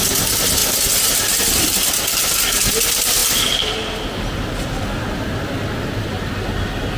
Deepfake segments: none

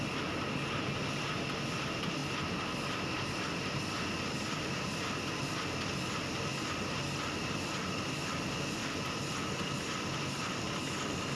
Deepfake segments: none

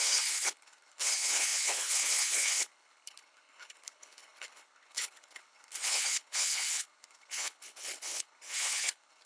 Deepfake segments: 0.0-9.3 (codec, HILCodec)

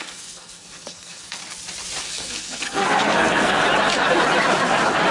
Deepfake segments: 0.0-1.4 (codec, SNAC); 2.0-3.6

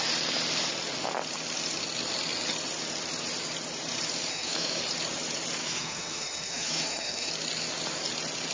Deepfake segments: 4.3-4.8 (autoencoder, DAC-VAE); 5.6-7.3

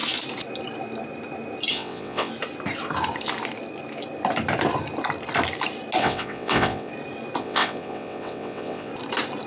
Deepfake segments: 1.7-2.3 (vocoder, WaveNeXt); 6.0-6.9; 7.4-8.9

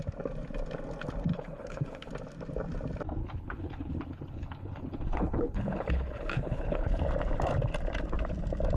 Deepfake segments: 1.3-2.1 (codec, HILCodec); 3.2-7.0